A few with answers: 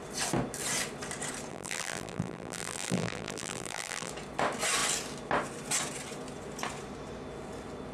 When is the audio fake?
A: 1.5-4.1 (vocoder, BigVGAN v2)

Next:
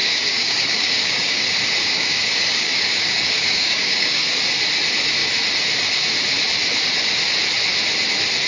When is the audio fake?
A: 0.0-1.4 (codec, DAC); 1.8-4.3